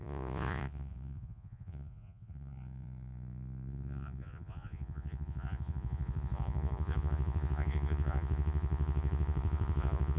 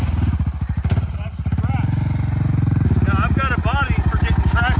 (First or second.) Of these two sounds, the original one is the second